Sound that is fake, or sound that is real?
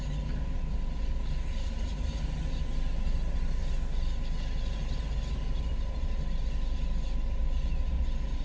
real